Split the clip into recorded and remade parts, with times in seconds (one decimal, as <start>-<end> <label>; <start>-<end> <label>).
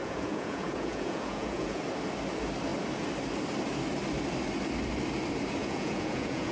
0.0-1.8 remade; 1.8-5.6 recorded; 5.6-6.5 remade